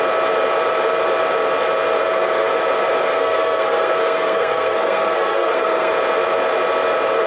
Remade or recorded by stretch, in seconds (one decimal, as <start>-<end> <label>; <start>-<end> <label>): 0.0-2.0 recorded; 2.0-2.5 remade; 2.5-3.1 recorded; 3.1-5.9 remade; 5.9-7.3 recorded